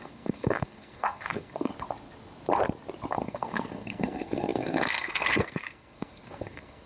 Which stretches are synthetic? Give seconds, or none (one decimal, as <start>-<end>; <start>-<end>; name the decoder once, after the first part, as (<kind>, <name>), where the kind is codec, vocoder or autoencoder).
0.0-1.7 (codec, SNAC); 3.1-6.9